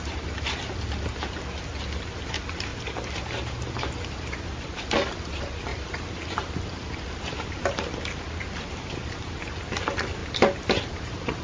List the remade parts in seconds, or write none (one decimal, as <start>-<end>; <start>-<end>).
2.7-5.1; 5.7-6.5; 10.2-10.8